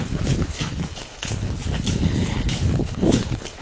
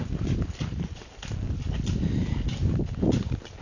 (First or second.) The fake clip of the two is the first